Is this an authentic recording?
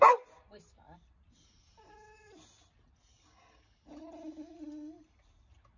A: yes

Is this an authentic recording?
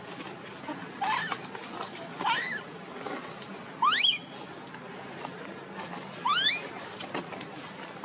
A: yes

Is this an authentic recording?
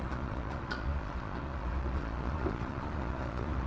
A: no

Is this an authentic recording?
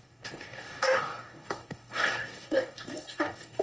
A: no